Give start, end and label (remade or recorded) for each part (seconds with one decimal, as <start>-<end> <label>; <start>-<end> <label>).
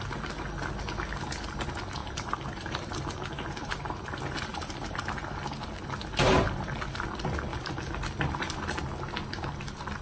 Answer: 0.0-2.0 recorded; 2.0-3.9 remade; 3.9-4.5 recorded; 4.5-5.2 remade; 5.2-10.0 recorded